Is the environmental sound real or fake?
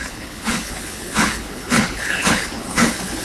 fake